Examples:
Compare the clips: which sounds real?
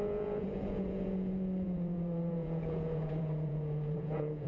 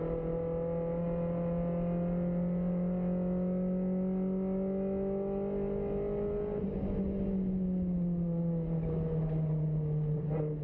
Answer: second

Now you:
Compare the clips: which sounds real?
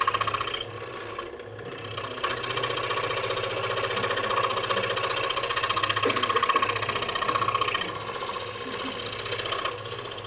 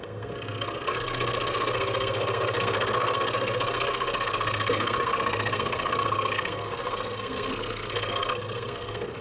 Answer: first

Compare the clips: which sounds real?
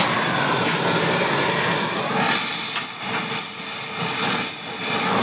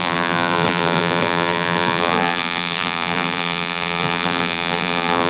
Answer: first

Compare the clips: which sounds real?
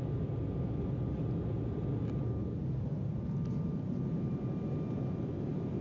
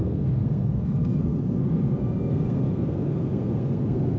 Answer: first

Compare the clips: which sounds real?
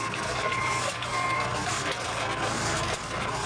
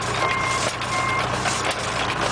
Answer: second